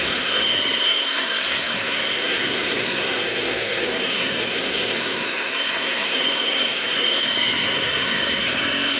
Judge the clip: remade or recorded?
remade